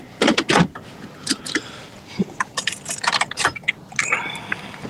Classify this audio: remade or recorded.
recorded